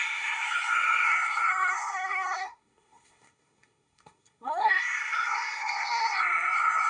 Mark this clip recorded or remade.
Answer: remade